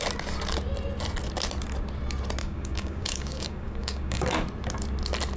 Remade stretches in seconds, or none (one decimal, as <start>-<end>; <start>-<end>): 2.4-4.2